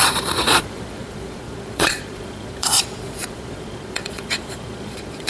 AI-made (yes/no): yes